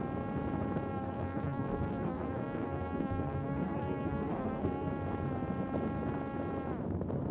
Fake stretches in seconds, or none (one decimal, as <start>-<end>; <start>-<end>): 0.9-4.9